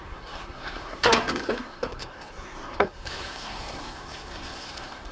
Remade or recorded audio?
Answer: remade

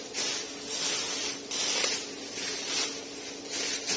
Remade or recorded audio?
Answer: recorded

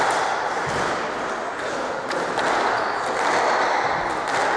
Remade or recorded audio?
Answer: recorded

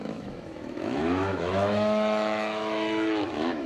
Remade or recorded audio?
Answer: remade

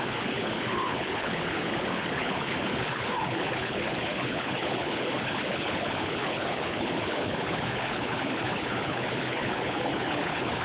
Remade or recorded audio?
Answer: remade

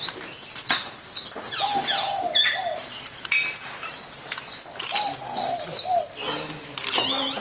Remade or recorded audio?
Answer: recorded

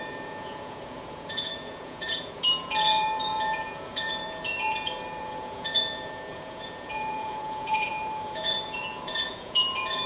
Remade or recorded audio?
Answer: remade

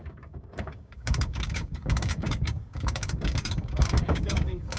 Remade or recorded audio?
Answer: remade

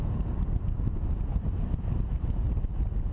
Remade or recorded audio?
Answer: recorded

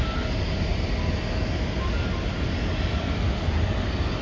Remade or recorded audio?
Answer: recorded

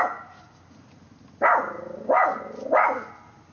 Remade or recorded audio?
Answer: recorded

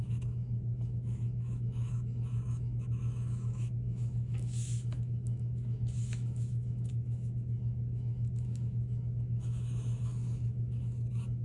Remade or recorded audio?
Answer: remade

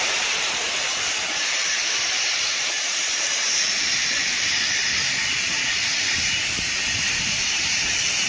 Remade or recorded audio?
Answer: remade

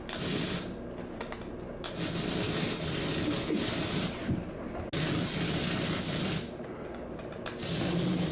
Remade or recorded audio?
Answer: recorded